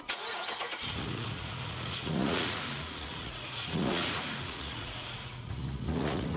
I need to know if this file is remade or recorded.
remade